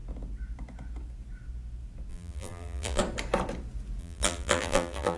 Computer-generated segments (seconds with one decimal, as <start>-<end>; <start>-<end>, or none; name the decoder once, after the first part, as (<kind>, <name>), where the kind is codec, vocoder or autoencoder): 2.1-3.0 (vocoder, BigVGAN v2); 4.0-5.2